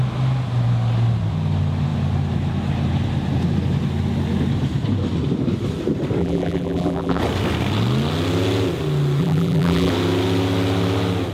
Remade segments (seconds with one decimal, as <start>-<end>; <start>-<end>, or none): 6.2-7.2; 9.2-9.9